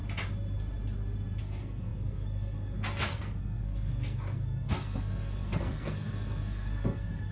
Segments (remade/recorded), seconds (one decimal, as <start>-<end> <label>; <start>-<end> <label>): 0.0-1.4 recorded; 1.4-7.3 remade